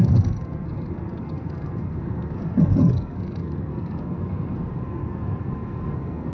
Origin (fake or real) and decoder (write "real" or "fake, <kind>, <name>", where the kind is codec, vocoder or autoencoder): fake, codec, SNAC